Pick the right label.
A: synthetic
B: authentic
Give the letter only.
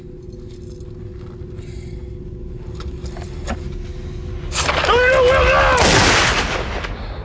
B